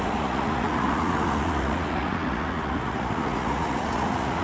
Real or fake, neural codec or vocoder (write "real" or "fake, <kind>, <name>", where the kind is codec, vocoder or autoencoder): fake, vocoder, Vocos